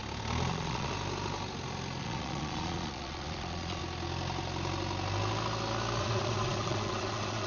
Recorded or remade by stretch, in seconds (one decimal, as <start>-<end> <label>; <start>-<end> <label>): 0.0-0.5 recorded; 0.5-0.9 remade; 0.9-2.0 recorded; 2.0-3.8 remade; 3.8-6.0 recorded; 6.0-7.5 remade